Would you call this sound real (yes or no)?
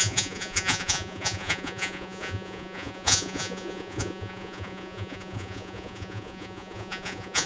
no